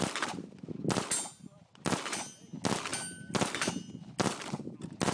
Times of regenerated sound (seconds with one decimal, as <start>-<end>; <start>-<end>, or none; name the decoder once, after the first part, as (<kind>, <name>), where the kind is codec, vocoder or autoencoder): none